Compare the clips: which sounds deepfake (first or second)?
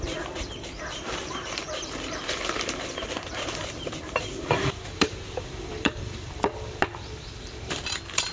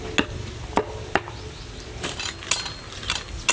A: first